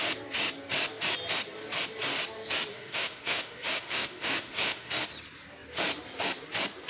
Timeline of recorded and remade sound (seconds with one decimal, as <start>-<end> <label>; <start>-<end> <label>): 0.0-2.7 recorded; 2.7-4.9 remade; 4.9-6.9 recorded